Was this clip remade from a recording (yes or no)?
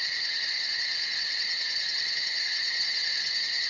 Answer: yes